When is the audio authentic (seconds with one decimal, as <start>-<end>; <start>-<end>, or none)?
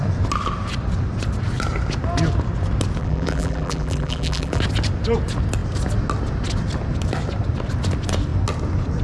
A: 0.0-3.0; 4.6-9.0